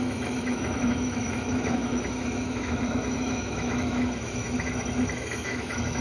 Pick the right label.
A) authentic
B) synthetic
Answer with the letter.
B